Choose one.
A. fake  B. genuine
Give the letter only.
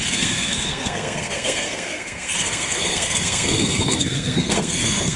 A